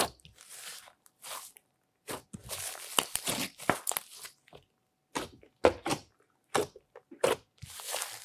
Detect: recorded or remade recorded